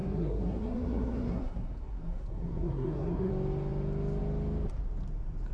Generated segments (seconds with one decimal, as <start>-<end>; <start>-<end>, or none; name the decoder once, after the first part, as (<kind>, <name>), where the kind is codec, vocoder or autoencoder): 0.0-3.3 (codec, SNAC)